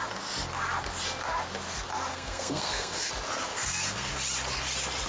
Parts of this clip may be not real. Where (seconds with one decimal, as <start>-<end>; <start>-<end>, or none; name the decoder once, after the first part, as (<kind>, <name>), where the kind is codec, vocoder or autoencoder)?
2.1-3.1 (codec, SNAC); 3.5-4.1